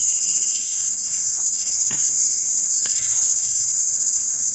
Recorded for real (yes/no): no